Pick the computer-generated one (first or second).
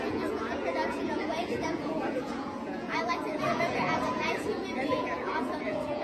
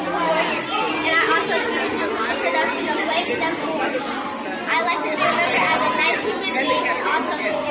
first